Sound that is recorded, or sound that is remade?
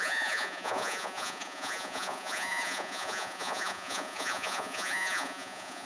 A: remade